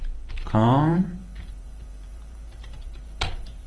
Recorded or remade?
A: remade